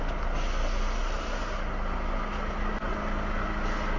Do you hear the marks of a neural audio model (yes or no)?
no